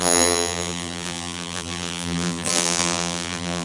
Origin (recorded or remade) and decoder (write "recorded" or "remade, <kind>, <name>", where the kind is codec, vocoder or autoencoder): remade, vocoder, BigVGAN v2